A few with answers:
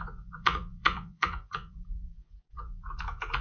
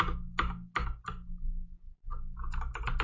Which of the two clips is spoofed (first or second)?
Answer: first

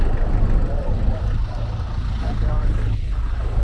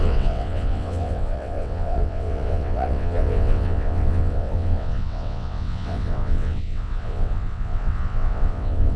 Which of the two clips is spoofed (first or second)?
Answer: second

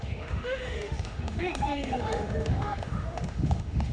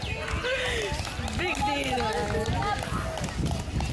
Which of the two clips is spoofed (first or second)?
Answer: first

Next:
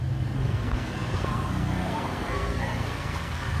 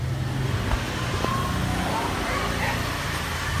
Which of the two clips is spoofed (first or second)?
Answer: first